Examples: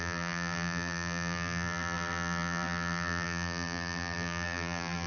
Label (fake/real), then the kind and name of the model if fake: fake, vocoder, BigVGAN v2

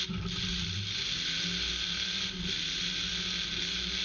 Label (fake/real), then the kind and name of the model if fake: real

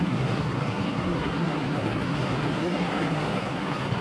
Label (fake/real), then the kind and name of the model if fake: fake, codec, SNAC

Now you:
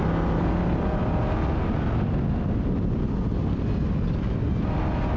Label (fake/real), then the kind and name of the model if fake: real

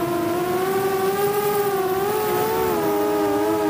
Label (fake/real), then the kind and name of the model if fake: real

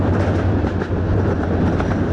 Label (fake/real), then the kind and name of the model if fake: real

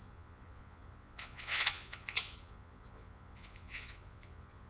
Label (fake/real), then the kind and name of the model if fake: fake, vocoder, Vocos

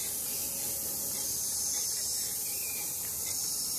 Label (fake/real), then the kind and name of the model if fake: real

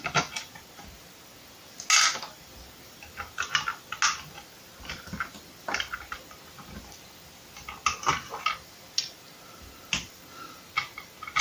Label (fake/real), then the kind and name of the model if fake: real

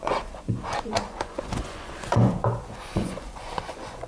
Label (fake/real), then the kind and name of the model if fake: fake, vocoder, Vocos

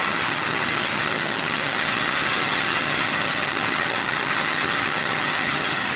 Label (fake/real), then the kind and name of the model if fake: fake, vocoder, HiFi-GAN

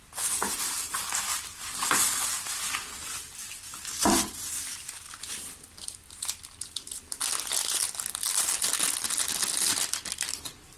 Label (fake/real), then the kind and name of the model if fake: real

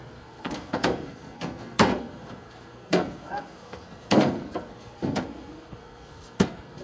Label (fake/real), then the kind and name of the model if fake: fake, codec, SNAC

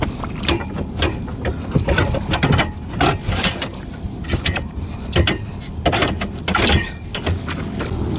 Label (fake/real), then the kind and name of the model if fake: real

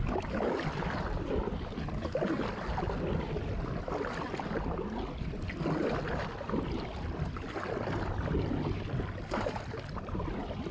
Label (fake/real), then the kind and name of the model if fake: real